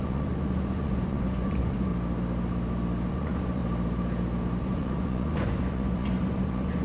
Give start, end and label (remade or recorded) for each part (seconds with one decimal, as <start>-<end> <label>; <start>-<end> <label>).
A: 0.0-1.9 remade; 1.9-3.1 recorded; 3.1-3.6 remade; 3.6-4.6 recorded; 4.6-6.8 remade